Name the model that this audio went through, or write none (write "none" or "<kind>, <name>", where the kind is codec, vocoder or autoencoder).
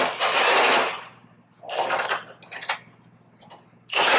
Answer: none